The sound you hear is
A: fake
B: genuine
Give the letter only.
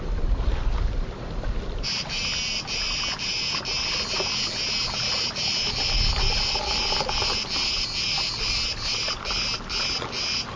B